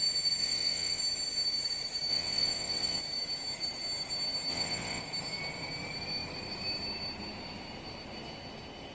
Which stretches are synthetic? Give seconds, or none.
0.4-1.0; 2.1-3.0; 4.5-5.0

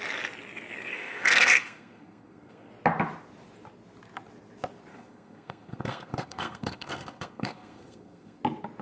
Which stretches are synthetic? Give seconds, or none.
0.9-2.7; 4.9-8.4

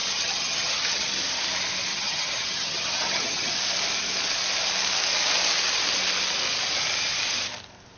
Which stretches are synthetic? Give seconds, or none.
0.0-1.2; 1.9-3.6

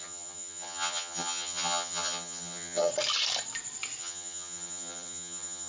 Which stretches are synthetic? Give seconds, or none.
0.0-2.9; 4.0-5.7

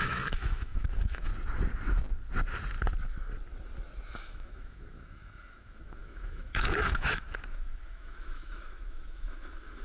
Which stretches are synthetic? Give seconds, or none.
0.0-1.3; 4.2-9.8

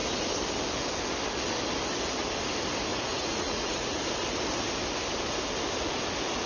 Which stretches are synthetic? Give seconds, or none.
2.9-4.0

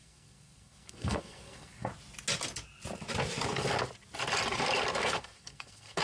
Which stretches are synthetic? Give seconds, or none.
0.0-1.9; 4.9-6.0